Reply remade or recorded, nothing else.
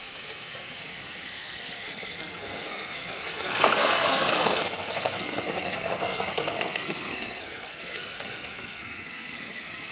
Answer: remade